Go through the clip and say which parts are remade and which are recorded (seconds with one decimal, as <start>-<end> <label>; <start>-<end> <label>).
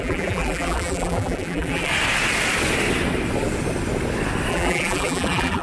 0.0-1.9 remade; 1.9-4.5 recorded; 4.5-5.6 remade